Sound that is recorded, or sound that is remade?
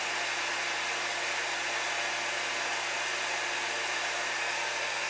recorded